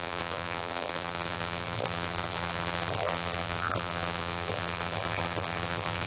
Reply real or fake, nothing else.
fake